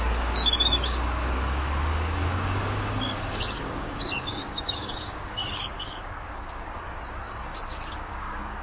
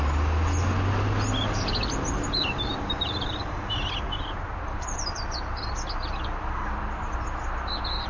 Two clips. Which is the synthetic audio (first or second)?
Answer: first